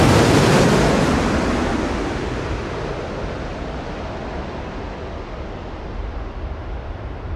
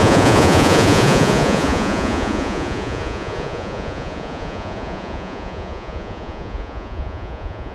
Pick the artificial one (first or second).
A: second